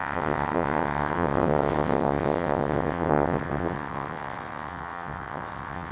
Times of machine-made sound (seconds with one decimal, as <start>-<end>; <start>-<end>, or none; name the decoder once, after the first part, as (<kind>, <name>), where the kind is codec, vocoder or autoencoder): 0.0-5.9 (vocoder, WaveNeXt)